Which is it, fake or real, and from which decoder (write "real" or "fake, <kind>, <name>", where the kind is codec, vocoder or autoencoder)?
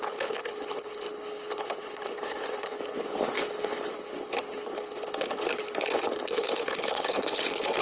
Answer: fake, codec, HILCodec